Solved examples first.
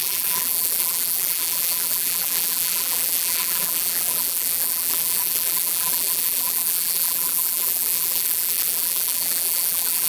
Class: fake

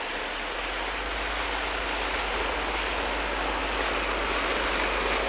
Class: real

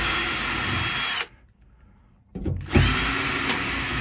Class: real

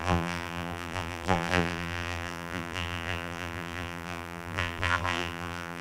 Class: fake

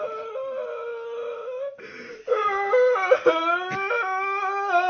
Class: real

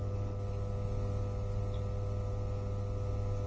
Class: real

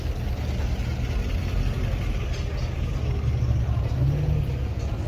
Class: real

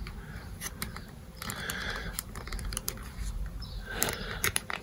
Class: fake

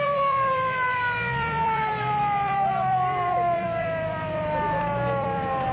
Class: fake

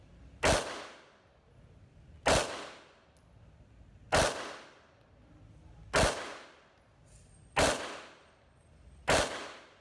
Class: real